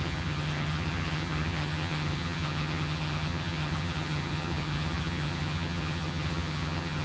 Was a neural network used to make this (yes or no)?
yes